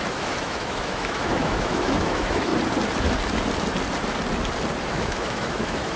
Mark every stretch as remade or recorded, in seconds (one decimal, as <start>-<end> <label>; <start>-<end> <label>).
0.0-2.5 remade; 2.5-4.9 recorded; 4.9-6.0 remade